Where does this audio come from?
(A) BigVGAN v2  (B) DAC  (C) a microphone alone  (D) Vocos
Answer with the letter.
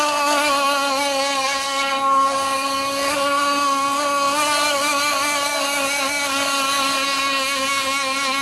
B